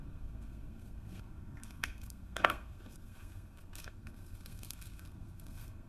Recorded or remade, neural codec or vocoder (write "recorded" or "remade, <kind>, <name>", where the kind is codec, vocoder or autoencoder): remade, codec, SNAC